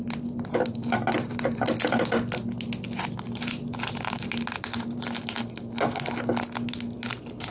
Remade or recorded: recorded